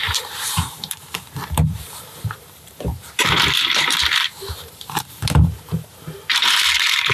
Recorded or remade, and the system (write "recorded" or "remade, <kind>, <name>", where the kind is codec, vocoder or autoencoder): remade, vocoder, BigVGAN v2